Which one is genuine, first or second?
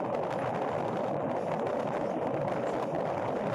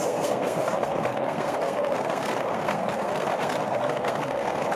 first